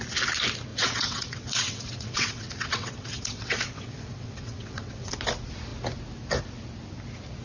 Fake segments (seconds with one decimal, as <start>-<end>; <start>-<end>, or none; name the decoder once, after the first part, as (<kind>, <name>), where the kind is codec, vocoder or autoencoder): 0.7-5.1 (vocoder, WaveNeXt)